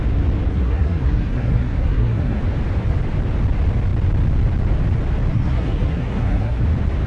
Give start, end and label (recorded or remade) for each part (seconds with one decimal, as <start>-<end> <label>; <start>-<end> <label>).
0.0-0.5 recorded; 0.5-2.4 remade; 2.4-5.3 recorded; 5.3-6.6 remade; 6.6-7.1 recorded